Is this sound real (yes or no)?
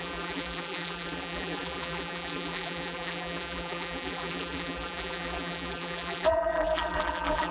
no